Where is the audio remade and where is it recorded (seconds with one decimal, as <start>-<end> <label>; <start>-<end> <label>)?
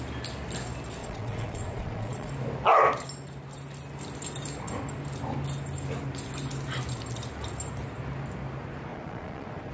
0.0-1.0 recorded; 1.0-2.3 remade; 2.3-8.9 recorded; 8.9-9.7 remade